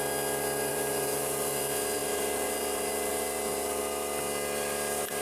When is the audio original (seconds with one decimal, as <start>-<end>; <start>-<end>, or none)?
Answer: 0.0-0.7; 1.6-2.0; 3.8-5.2